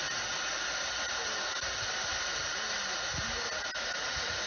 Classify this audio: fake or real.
real